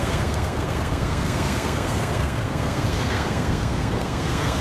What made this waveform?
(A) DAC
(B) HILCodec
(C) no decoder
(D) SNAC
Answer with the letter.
D